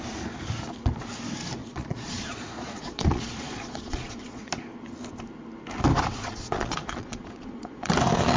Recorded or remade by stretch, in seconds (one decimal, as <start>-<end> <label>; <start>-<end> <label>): 0.0-1.6 recorded; 1.6-4.5 remade; 4.5-6.1 recorded; 6.1-7.9 remade; 7.9-8.4 recorded

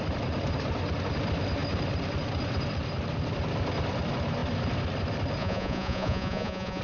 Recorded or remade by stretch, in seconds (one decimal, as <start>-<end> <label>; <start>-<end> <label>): 0.0-5.4 recorded; 5.4-6.8 remade

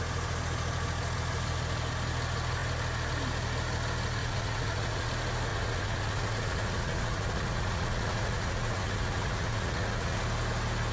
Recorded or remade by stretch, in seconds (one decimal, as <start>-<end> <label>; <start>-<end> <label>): 0.0-4.2 recorded; 4.2-5.1 remade; 5.1-5.5 recorded; 5.5-10.2 remade; 10.2-10.9 recorded

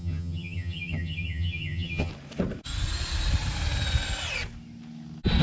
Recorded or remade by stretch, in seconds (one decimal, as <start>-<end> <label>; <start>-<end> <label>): 0.0-2.1 remade; 2.1-5.4 recorded